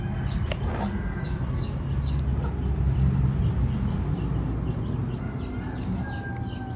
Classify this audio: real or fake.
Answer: real